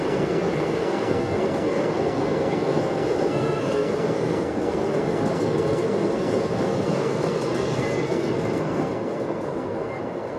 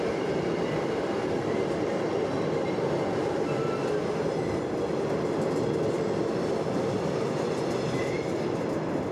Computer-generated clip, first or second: first